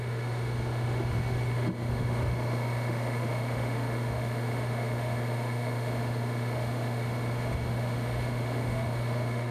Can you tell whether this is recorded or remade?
remade